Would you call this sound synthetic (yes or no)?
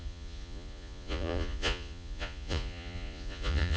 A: yes